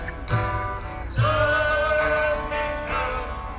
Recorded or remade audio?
recorded